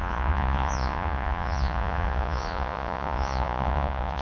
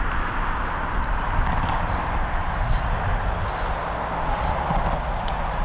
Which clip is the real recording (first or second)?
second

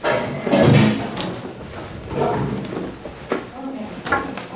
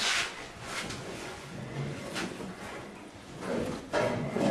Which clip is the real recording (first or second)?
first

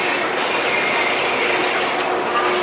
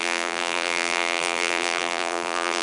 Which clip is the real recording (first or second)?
first